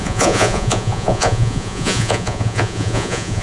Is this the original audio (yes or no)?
no